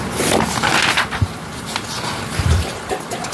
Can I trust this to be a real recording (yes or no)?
yes